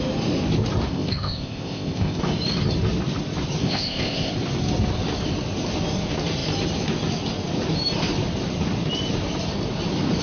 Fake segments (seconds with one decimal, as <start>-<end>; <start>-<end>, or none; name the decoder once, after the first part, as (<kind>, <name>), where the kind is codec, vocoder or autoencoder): 0.9-2.2 (codec, ZipCodec); 3.6-4.3